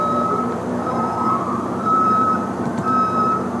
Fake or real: fake